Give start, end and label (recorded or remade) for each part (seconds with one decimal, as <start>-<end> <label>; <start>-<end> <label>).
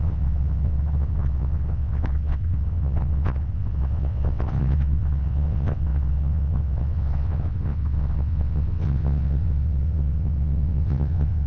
0.0-11.5 remade